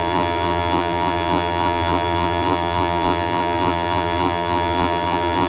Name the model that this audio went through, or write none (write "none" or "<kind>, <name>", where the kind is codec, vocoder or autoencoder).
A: vocoder, BigVGAN v2